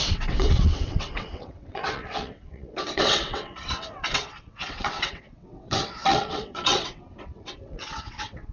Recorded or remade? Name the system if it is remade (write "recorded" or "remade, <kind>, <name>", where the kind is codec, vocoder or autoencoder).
remade, vocoder, WaveNeXt